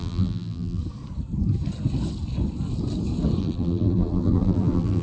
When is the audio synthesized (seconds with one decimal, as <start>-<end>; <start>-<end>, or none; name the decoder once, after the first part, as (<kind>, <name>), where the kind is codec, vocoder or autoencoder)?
0.0-0.8 (vocoder, BigVGAN v2); 3.4-5.0